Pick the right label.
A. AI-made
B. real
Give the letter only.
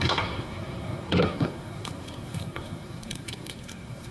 A